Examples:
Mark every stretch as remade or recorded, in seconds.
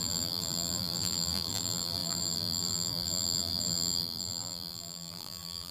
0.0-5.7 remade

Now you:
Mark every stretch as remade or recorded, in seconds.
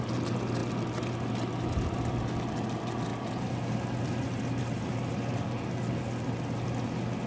0.0-7.3 recorded